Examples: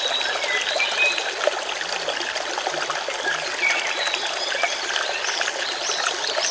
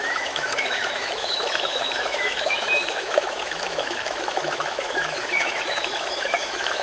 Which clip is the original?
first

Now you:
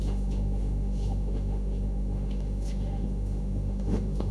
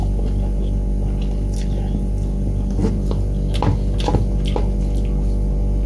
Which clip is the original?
second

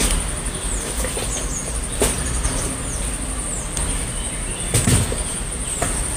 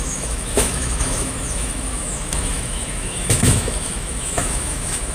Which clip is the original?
first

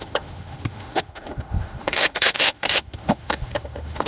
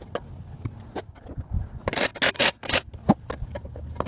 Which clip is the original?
second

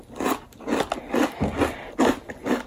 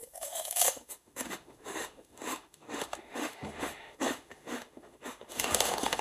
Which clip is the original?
first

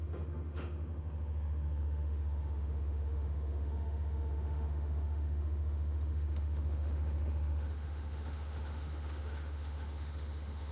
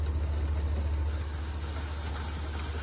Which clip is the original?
second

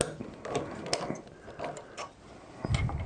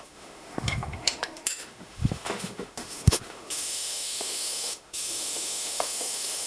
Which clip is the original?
first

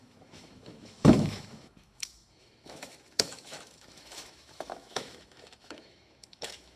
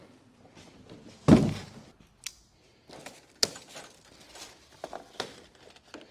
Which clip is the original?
second